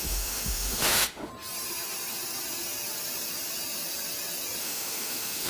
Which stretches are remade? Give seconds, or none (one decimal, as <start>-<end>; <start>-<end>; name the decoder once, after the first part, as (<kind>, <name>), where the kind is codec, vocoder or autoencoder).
0.0-1.3 (autoencoder, DAC-VAE); 4.6-5.5

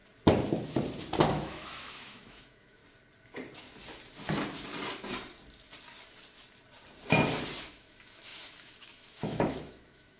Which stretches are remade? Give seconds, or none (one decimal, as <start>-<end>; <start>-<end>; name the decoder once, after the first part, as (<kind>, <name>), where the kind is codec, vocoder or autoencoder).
1.3-2.8 (autoencoder, DAC-VAE); 7.7-10.2

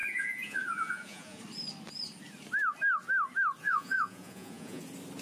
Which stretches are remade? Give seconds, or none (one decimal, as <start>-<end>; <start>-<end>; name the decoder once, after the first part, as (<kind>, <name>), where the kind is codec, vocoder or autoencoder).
0.0-1.4 (vocoder, Vocos); 3.6-4.8

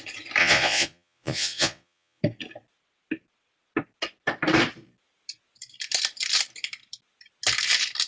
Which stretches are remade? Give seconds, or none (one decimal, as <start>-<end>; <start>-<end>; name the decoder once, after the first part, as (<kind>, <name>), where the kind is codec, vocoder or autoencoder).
0.4-2.2 (vocoder, Vocos)

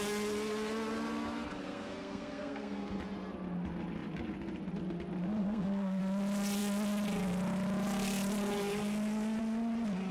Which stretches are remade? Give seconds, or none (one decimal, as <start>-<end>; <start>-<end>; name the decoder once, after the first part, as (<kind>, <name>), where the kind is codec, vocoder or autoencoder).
1.5-3.0 (codec, SNAC); 5.4-6.0

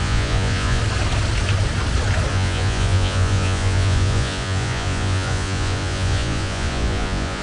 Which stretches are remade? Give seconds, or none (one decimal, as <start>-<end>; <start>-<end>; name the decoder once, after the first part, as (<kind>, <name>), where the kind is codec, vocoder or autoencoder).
0.0-0.8 (vocoder, Vocos); 2.3-7.4

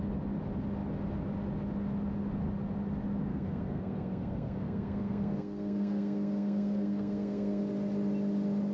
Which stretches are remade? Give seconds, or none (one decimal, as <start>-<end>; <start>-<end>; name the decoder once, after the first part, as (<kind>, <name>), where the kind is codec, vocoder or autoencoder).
3.3-7.6 (codec, SNAC)

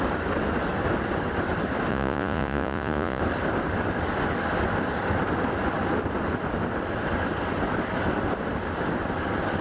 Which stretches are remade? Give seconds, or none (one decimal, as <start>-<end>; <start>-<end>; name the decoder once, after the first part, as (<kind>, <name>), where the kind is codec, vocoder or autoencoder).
1.9-3.2 (vocoder, Vocos)